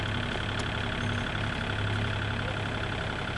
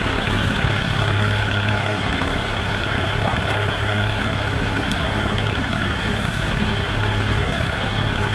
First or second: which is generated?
second